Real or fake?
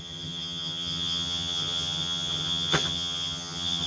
fake